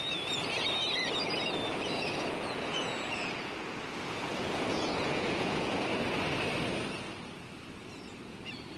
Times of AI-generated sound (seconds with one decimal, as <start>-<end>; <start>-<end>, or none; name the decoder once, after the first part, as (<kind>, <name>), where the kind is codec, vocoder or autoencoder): 1.7-5.9 (vocoder, Vocos); 7.8-8.4